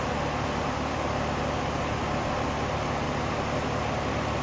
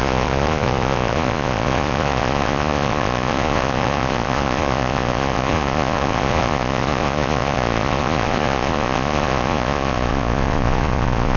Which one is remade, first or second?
second